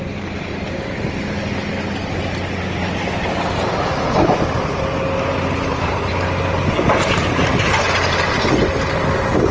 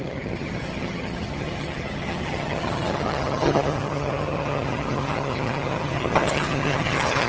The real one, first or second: first